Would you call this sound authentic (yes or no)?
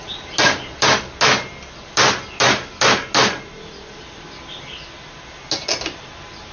yes